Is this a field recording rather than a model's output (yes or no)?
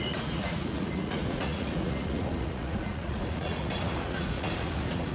no